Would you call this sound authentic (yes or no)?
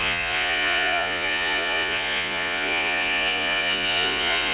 no